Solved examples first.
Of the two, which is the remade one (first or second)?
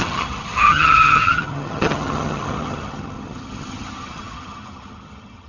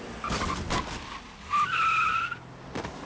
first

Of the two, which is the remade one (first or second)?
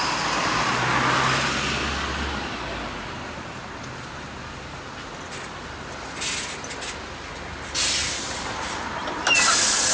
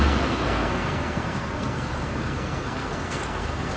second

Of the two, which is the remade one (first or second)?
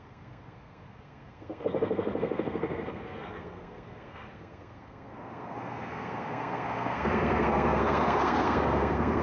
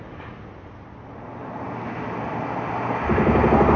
first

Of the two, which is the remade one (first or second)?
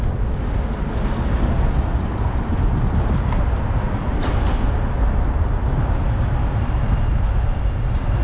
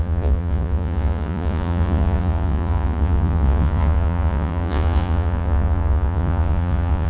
second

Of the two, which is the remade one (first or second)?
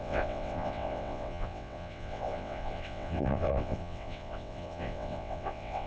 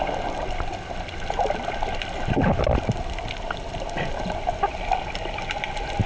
first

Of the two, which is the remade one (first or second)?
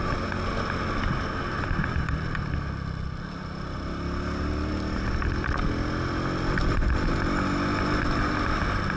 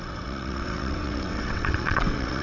second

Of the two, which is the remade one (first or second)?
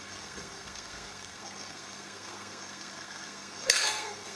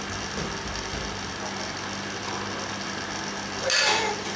first